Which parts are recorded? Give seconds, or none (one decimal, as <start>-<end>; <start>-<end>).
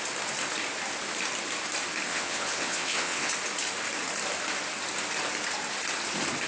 0.0-2.1; 3.3-6.5